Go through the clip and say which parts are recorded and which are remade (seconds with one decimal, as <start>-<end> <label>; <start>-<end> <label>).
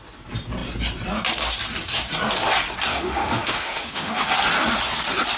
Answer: 0.0-2.9 recorded; 2.9-4.2 remade; 4.2-5.4 recorded